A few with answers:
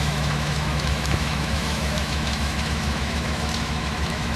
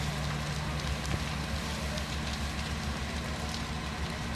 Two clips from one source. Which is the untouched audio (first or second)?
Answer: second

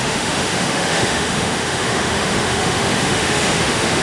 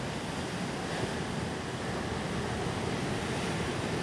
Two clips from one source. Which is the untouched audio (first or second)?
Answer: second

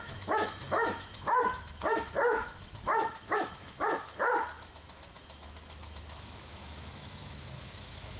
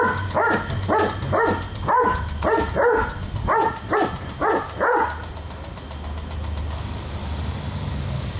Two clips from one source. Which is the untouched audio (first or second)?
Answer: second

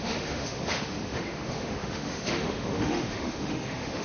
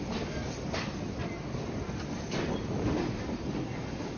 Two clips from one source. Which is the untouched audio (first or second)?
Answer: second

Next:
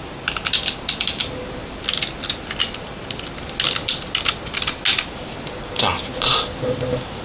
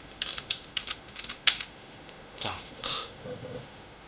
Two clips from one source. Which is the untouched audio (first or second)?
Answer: first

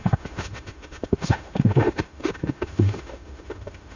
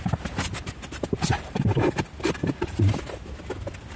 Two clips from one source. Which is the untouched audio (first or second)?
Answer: second